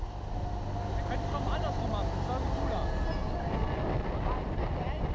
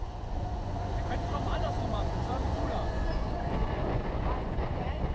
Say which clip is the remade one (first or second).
second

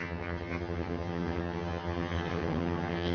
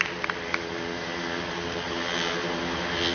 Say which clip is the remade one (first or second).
first